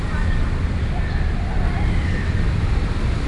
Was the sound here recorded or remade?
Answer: recorded